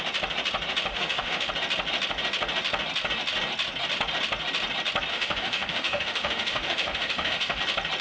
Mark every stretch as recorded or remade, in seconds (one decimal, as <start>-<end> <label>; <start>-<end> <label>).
0.0-0.9 recorded; 0.9-1.5 remade; 1.5-5.1 recorded; 5.1-7.6 remade; 7.6-8.0 recorded